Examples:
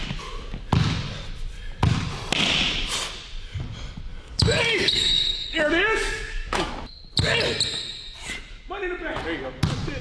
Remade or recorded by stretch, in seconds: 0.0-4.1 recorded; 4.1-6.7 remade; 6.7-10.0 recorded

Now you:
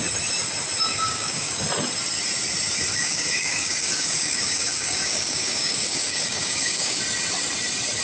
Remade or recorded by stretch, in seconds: 0.0-0.9 recorded; 0.9-1.6 remade; 1.6-2.9 recorded; 2.9-7.0 remade; 7.0-8.0 recorded

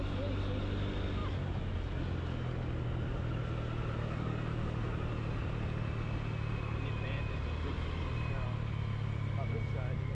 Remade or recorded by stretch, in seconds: 0.0-4.0 recorded; 4.0-4.6 remade; 4.6-10.1 recorded

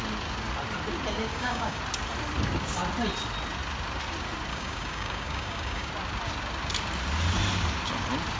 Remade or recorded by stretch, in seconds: 0.0-1.3 recorded; 1.3-1.8 remade; 1.8-4.5 recorded; 4.5-5.9 remade; 5.9-8.4 recorded

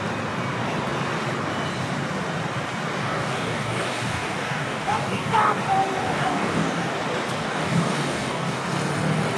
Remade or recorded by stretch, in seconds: 0.0-3.0 recorded; 3.0-5.6 remade; 5.6-6.0 recorded; 6.0-6.9 remade; 6.9-7.4 recorded; 7.4-8.6 remade; 8.6-9.4 recorded

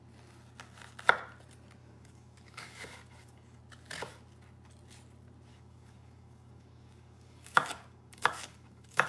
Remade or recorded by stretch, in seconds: 0.0-1.8 recorded; 1.8-3.6 remade; 3.6-5.5 recorded; 5.5-9.1 remade

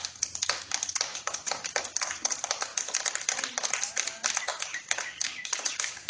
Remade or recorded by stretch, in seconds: 0.0-1.1 recorded; 1.1-1.7 remade; 1.7-4.5 recorded; 4.5-6.1 remade